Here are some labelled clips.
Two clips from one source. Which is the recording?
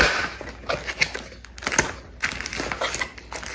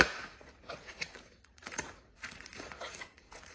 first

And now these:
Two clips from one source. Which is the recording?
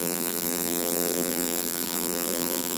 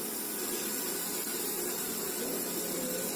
second